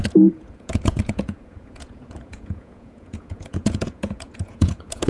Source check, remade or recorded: remade